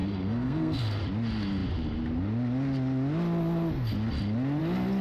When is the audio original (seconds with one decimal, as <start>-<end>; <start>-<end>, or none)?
1.0-5.0